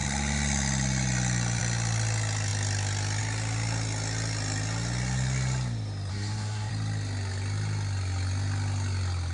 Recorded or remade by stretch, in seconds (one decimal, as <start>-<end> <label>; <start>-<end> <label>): 0.0-6.1 recorded; 6.1-6.7 remade; 6.7-9.3 recorded